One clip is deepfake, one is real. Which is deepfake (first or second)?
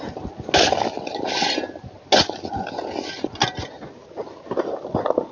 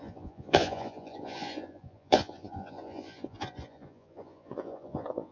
second